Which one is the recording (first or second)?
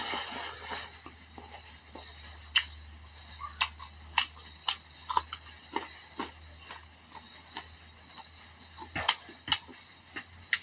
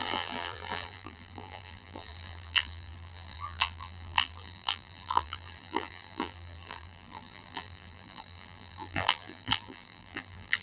first